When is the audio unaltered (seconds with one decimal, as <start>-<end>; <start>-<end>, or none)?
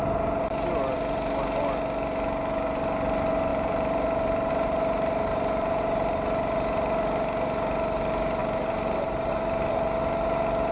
0.0-3.5; 4.5-5.3; 6.1-8.4; 9.3-10.7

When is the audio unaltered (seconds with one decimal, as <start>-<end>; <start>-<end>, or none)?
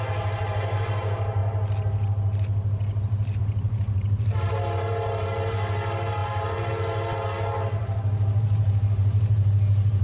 1.4-3.4; 7.8-8.4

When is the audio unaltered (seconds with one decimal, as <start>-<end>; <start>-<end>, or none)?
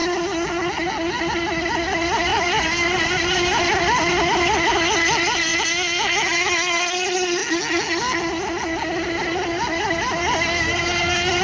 0.0-2.3; 3.8-11.4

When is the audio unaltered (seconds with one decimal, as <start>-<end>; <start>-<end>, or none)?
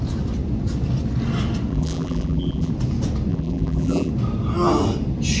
0.0-1.7; 2.7-3.3; 4.1-5.4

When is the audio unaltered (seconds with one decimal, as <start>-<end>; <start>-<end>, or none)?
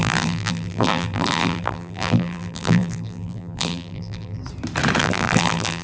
4.4-5.0